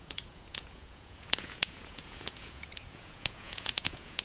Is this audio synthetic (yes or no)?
yes